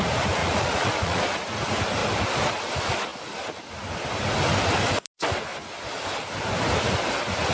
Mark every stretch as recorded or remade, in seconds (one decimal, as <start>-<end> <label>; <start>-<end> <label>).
0.0-0.4 recorded; 0.4-1.2 remade; 1.2-7.5 recorded